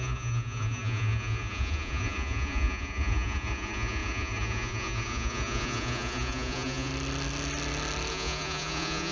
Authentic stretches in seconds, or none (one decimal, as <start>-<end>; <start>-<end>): 6.9-8.1